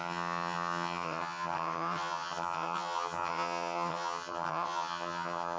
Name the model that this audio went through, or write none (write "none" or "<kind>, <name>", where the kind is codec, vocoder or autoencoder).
vocoder, HiFi-GAN